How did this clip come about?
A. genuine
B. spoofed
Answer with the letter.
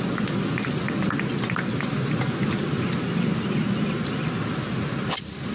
A